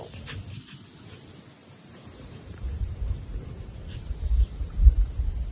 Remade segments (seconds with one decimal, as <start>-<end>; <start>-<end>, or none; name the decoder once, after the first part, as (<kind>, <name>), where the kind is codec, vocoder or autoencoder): 1.6-4.9 (vocoder, BigVGAN v2)